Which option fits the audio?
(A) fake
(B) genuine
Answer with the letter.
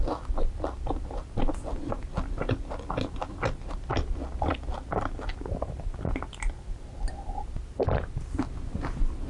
B